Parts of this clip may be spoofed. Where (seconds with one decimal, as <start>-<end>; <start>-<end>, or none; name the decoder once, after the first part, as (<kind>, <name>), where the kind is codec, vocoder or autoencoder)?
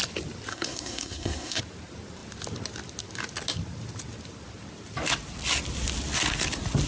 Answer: 0.5-1.6 (codec, SNAC)